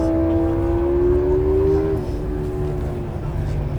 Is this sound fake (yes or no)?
no